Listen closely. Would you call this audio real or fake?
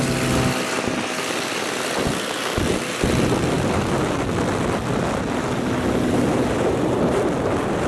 real